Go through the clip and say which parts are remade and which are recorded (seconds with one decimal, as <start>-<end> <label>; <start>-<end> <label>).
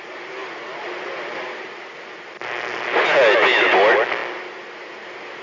0.0-5.4 recorded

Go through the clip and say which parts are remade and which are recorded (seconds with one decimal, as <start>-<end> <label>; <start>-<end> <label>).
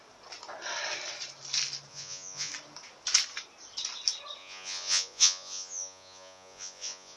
0.0-1.9 recorded; 1.9-2.5 remade; 2.5-4.4 recorded; 4.4-7.2 remade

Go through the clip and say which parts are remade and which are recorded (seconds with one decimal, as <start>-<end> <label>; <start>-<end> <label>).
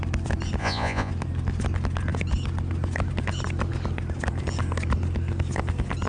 0.0-0.6 recorded; 0.6-1.1 remade; 1.1-6.1 recorded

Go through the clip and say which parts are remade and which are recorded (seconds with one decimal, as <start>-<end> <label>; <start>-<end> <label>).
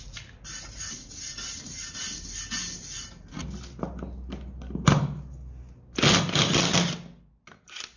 0.0-8.0 recorded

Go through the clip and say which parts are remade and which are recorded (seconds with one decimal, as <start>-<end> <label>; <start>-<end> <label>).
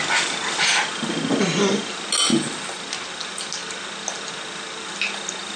0.0-5.6 recorded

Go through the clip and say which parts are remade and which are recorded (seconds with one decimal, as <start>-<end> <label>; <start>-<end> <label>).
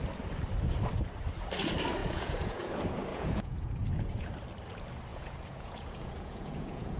0.0-2.0 recorded; 2.0-2.7 remade; 2.7-3.1 recorded; 3.1-4.3 remade; 4.3-5.1 recorded; 5.1-7.0 remade